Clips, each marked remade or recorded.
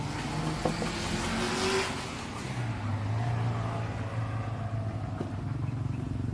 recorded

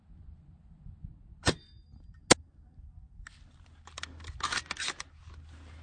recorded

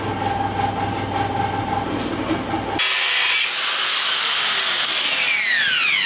recorded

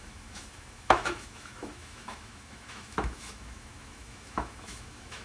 remade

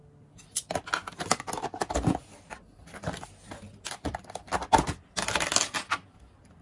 recorded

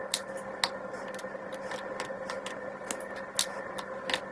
recorded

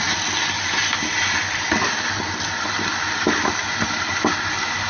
recorded